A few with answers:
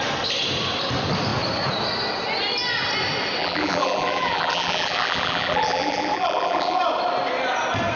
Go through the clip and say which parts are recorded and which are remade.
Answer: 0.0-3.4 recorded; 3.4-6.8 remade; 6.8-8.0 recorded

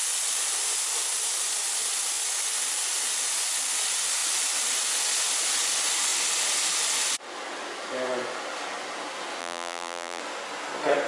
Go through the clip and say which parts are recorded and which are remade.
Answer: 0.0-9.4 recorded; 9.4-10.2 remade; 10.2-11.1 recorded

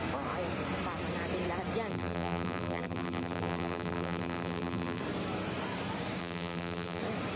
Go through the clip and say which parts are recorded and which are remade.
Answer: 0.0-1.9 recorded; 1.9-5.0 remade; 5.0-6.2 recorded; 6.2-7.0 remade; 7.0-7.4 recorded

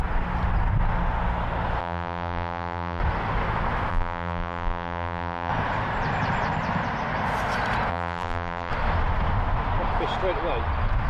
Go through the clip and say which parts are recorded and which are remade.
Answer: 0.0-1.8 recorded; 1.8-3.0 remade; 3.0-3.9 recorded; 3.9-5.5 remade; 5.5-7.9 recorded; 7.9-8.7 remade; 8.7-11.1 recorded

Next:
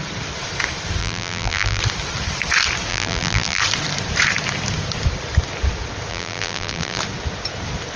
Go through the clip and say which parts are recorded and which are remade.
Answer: 0.0-1.0 recorded; 1.0-1.8 remade; 1.8-2.9 recorded; 2.9-3.6 remade; 3.6-6.1 recorded; 6.1-7.0 remade; 7.0-8.0 recorded

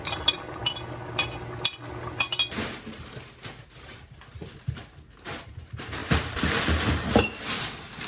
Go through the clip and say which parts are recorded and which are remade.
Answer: 0.0-6.0 recorded; 6.0-6.6 remade; 6.6-8.1 recorded